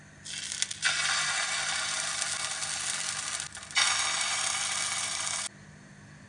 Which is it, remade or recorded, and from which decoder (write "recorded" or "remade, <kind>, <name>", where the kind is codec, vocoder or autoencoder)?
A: recorded